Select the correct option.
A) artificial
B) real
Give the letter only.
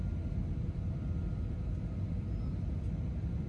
B